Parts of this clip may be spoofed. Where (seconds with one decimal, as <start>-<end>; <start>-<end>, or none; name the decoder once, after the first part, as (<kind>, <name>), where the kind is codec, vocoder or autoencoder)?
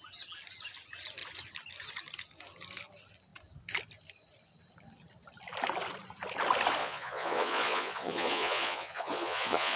6.8-9.8 (vocoder, Vocos)